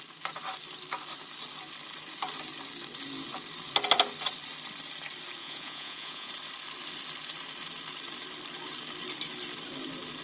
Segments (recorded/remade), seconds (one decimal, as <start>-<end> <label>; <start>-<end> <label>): 0.0-5.4 recorded; 5.4-6.3 remade; 6.3-10.2 recorded